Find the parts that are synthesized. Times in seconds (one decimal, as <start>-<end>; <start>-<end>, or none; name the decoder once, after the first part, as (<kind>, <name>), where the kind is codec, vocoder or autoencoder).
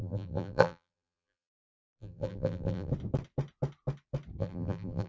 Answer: 0.0-2.9 (vocoder, BigVGAN v2); 4.4-5.1